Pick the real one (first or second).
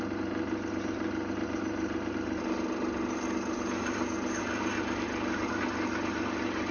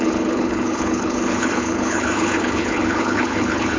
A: first